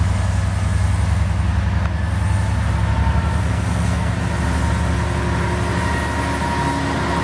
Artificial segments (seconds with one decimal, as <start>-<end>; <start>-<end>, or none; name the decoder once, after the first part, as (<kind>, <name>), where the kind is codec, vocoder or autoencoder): 3.4-4.1 (codec, SNAC)

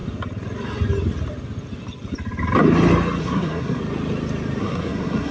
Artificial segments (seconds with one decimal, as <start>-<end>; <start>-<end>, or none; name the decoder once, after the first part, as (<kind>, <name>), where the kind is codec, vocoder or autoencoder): 3.2-3.8 (codec, SNAC); 4.6-5.3